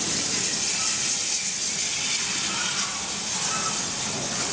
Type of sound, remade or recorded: recorded